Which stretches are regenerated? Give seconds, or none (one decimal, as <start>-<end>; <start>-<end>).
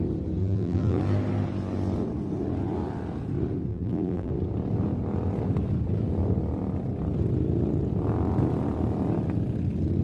0.4-1.0; 3.7-4.3